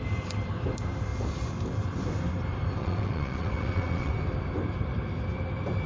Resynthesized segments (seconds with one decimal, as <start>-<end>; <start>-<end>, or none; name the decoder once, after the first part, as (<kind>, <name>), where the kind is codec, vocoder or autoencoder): 2.8-4.1 (vocoder, WaveNeXt)